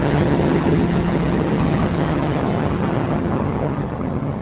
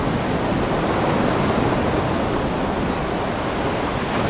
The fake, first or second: first